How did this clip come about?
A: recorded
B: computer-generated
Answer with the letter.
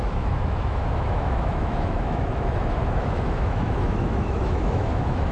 B